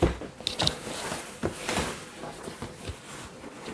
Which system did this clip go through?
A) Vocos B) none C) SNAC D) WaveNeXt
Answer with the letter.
B